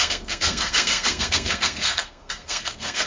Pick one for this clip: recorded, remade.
remade